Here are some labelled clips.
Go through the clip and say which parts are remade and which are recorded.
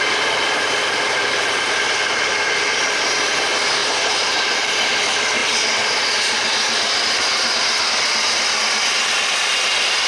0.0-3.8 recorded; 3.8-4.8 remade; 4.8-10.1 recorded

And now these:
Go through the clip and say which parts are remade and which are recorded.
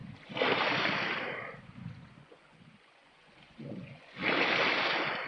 0.0-1.6 recorded; 1.6-4.2 remade; 4.2-5.3 recorded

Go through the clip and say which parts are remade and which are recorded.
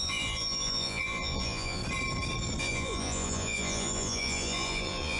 0.0-1.8 remade; 1.8-2.6 recorded; 2.6-5.2 remade